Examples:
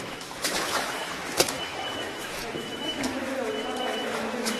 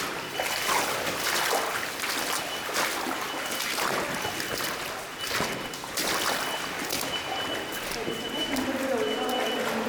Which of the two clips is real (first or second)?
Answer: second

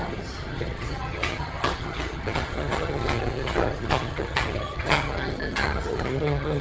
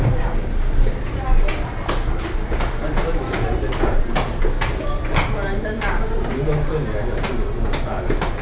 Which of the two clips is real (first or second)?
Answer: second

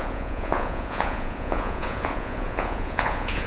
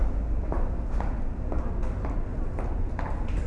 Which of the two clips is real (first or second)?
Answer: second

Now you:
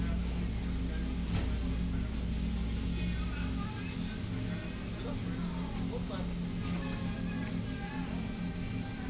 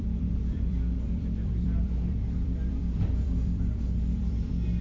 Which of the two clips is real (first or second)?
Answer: first